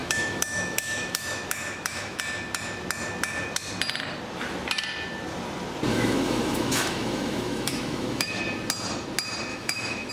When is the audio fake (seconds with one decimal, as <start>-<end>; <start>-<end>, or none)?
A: 0.0-2.2; 5.9-8.4; 9.5-10.1